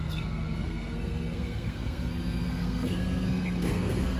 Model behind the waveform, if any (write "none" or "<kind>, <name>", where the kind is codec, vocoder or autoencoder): codec, SNAC